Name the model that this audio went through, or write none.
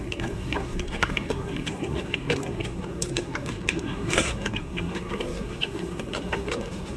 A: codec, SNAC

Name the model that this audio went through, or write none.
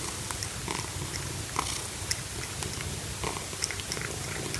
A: none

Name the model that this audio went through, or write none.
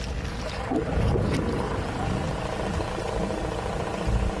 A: none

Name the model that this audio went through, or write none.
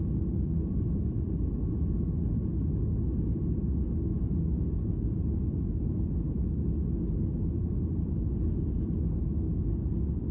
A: none